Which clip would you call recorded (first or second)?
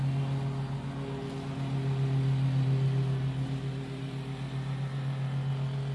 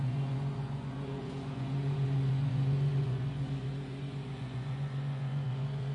first